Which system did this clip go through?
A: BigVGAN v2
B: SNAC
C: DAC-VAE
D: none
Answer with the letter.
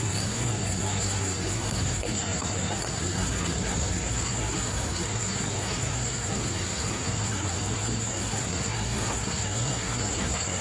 B